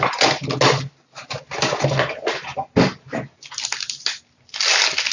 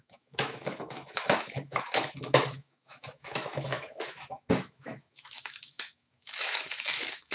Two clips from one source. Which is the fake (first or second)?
second